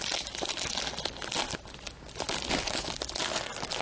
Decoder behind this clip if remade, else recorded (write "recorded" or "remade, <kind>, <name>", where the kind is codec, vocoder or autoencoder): recorded